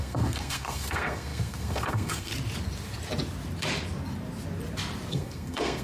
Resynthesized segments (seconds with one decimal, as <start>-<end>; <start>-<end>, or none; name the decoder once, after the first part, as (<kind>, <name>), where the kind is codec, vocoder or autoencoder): 0.0-2.3 (codec, SNAC); 5.1-5.8